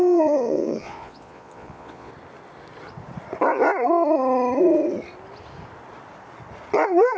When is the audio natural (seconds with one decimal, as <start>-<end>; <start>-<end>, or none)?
2.1-7.2